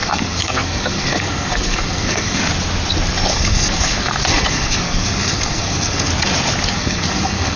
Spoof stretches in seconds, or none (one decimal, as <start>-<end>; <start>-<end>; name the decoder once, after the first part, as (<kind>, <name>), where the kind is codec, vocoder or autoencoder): 0.0-2.4 (codec, SNAC); 3.3-6.1; 6.7-7.6